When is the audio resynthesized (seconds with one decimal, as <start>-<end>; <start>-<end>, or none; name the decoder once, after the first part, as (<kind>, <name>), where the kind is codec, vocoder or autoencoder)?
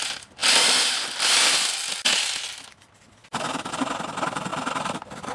0.4-2.7 (vocoder, BigVGAN v2); 3.2-3.8; 4.5-5.3